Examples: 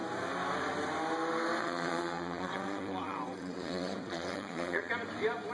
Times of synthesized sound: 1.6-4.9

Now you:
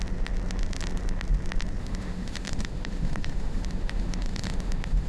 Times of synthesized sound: 1.8-5.1

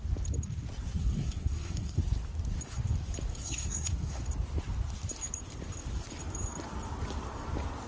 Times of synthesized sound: 1.0-2.0; 3.3-4.3

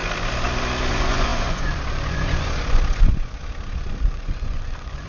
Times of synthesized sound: 0.9-3.4; 4.0-5.1

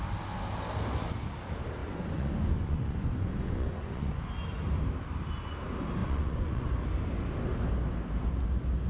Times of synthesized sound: 1.8-4.2; 6.0-6.7